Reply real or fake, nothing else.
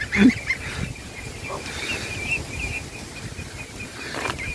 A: real